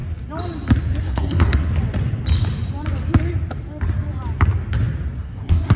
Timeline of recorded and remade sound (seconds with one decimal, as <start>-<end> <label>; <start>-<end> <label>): 0.0-1.0 recorded; 1.0-1.7 remade; 1.7-5.2 recorded; 5.2-5.8 remade